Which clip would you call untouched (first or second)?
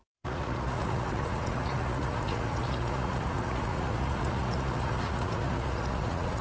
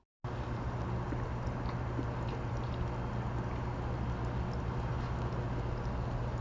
second